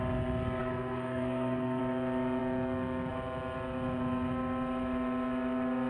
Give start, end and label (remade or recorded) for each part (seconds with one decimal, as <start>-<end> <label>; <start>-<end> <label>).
0.0-0.6 recorded; 0.6-1.8 remade; 1.8-5.9 recorded